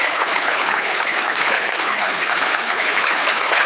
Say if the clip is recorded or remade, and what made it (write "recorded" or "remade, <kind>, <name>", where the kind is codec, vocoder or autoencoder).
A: remade, codec, HILCodec